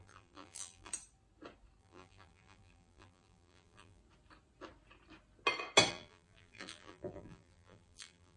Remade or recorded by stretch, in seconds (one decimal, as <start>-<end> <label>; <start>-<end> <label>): 0.0-0.9 remade; 0.9-1.8 recorded; 1.8-4.0 remade; 4.0-5.9 recorded; 5.9-8.4 remade